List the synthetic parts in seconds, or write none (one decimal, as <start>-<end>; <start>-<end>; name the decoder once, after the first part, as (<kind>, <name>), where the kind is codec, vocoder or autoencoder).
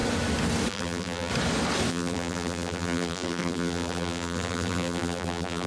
0.7-1.3 (vocoder, BigVGAN v2); 1.9-5.7